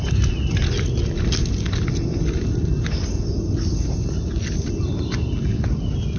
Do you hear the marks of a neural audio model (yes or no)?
no